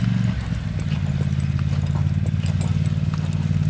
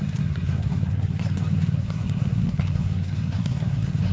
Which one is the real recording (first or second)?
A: first